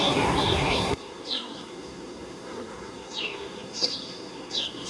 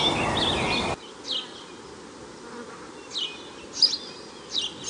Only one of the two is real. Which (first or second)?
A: second